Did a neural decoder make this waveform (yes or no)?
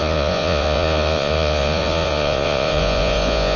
yes